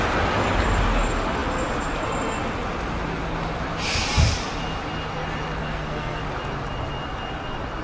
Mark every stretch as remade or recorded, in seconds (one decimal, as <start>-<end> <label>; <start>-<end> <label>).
0.0-5.6 recorded; 5.6-6.2 remade; 6.2-7.8 recorded